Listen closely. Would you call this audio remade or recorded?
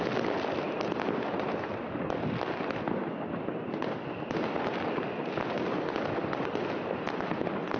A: recorded